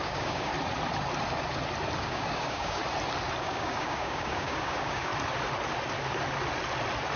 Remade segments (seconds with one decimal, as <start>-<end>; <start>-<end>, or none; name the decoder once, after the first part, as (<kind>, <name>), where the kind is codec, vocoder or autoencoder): 0.0-0.5 (codec, DAC); 2.0-2.8; 3.4-5.1